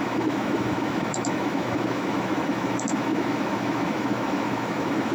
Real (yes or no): no